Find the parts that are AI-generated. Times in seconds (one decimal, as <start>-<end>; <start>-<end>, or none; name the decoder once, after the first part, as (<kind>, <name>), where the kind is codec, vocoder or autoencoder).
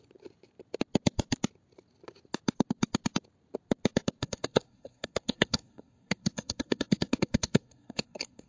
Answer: 4.2-8.5 (codec, SNAC)